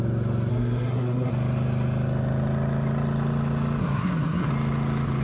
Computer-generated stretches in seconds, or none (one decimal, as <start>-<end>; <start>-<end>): 0.5-1.3; 3.8-4.5